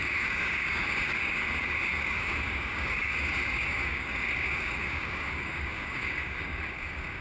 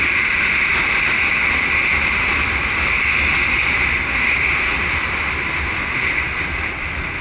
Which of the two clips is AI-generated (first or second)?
first